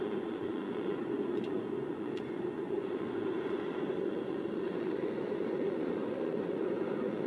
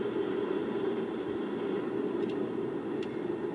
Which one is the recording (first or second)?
second